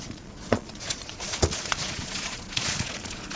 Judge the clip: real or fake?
fake